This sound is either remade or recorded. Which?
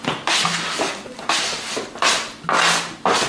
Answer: recorded